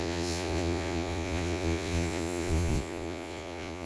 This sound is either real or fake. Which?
fake